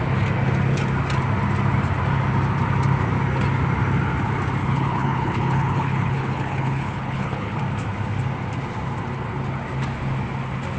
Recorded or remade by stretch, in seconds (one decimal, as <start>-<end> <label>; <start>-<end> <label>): 0.0-4.6 recorded; 4.6-7.6 remade; 7.6-10.8 recorded